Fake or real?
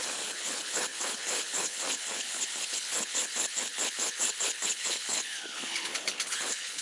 fake